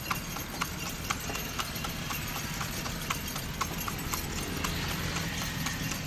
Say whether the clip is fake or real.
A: real